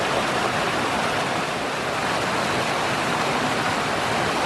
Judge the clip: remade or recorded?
recorded